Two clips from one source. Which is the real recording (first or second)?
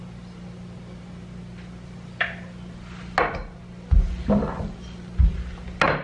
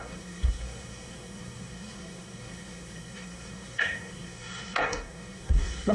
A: first